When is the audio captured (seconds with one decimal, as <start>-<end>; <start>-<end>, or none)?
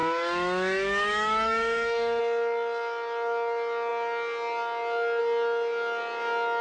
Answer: 2.2-6.6